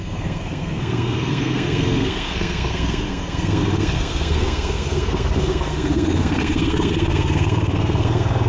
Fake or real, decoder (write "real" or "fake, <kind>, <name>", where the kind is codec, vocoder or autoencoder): fake, codec, SNAC